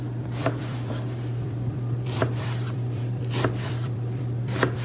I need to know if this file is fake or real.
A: fake